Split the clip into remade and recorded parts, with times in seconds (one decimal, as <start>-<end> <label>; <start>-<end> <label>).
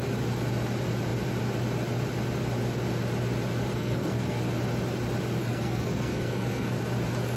0.0-3.7 recorded; 3.7-4.4 remade; 4.4-5.4 recorded; 5.4-6.8 remade; 6.8-7.4 recorded